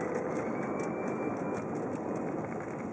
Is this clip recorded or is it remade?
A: recorded